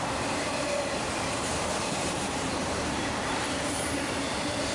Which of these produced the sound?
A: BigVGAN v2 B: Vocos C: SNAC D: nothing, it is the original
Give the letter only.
A